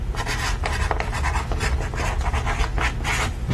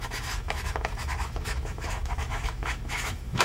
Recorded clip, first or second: first